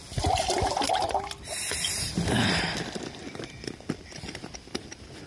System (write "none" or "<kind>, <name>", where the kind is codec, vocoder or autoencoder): vocoder, BigVGAN v2